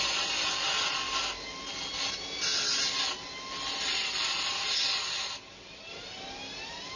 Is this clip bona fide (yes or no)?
yes